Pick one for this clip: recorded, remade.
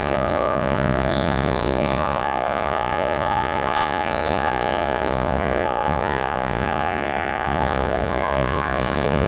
remade